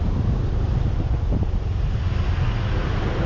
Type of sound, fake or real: real